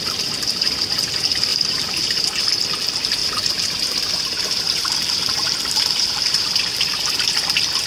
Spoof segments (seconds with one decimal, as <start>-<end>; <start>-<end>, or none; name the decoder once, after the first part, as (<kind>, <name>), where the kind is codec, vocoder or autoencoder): 1.5-2.2 (vocoder, BigVGAN v2); 3.2-7.3